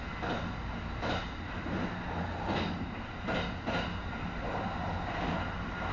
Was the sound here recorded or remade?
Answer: recorded